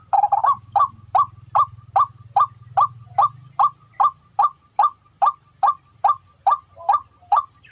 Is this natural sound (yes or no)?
yes